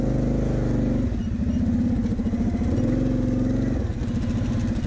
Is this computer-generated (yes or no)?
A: no